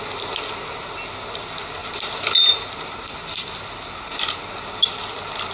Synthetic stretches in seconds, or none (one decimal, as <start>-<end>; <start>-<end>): none